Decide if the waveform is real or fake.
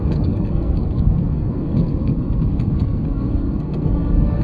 fake